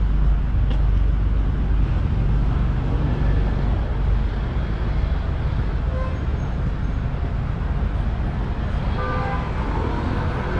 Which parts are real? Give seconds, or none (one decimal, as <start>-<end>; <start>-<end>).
0.0-10.6